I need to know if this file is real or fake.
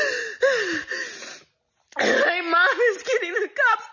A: real